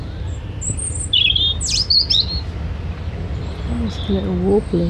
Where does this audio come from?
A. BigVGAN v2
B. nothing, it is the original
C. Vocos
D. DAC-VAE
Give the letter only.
B